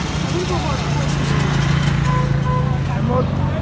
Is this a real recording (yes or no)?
yes